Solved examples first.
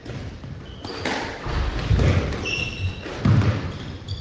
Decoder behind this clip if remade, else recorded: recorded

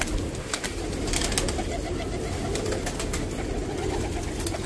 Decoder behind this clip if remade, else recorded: recorded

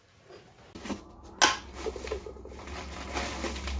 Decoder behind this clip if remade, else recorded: recorded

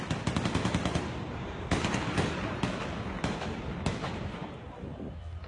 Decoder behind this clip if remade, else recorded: recorded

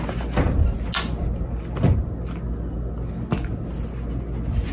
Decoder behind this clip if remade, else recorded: recorded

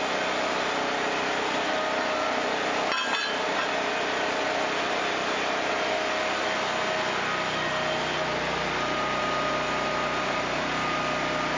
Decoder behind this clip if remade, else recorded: recorded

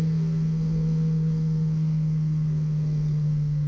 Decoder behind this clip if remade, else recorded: remade, codec, SNAC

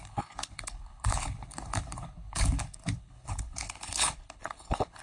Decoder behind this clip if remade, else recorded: remade, codec, HILCodec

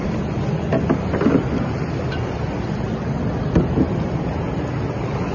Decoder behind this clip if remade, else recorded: recorded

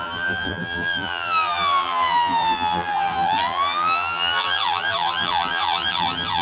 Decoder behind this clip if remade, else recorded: remade, vocoder, BigVGAN v2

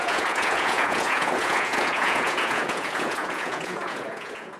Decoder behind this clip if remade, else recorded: remade, vocoder, Vocos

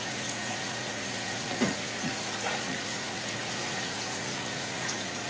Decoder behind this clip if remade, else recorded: remade, vocoder, Vocos